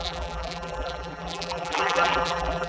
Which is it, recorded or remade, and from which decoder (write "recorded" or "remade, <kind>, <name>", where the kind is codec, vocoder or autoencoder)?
remade, vocoder, BigVGAN v2